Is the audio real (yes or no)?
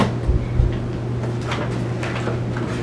yes